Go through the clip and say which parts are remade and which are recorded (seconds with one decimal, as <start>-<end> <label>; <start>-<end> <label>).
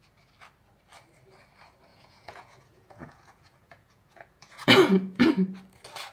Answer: 0.0-1.9 recorded; 1.9-5.3 remade; 5.3-6.1 recorded